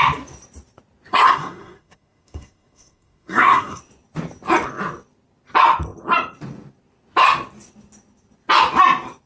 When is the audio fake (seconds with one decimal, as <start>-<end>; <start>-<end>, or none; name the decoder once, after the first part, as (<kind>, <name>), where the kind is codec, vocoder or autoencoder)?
1.1-3.8 (codec, SNAC)